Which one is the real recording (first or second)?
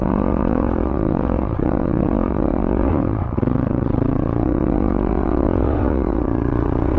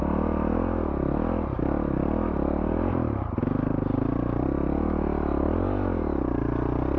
second